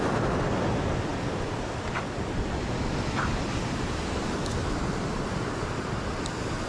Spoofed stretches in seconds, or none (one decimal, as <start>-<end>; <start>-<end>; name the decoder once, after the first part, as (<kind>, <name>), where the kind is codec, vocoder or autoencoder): none